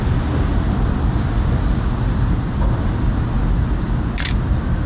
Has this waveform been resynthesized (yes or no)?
no